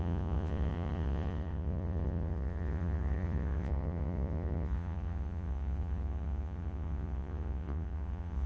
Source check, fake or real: fake